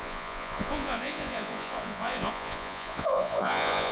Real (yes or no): no